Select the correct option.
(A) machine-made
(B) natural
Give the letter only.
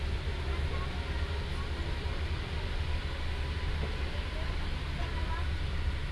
B